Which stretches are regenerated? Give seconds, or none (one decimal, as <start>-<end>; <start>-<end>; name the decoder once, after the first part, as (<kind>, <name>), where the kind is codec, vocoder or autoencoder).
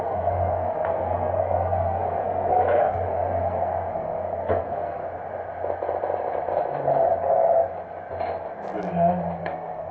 0.0-5.0 (codec, SNAC); 9.4-9.9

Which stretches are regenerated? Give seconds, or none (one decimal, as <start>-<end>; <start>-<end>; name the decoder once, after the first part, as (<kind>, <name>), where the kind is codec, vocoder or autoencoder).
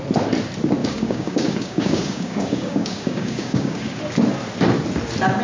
0.8-4.0 (codec, DAC)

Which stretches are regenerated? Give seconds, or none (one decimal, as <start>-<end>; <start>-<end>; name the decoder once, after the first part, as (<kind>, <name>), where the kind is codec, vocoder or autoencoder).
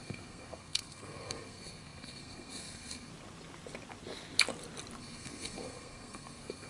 0.0-3.1 (codec, SNAC); 5.0-6.7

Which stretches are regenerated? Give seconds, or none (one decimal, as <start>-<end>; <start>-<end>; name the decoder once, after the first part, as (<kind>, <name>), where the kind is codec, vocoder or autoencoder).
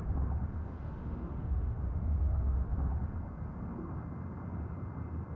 0.6-2.9 (autoencoder, DAC-VAE)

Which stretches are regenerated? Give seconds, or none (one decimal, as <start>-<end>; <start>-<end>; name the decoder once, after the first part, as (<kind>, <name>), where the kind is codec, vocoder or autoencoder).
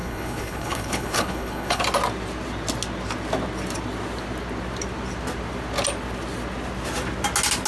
0.0-1.8 (codec, HILCodec)